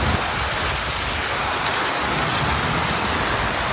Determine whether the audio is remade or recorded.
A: recorded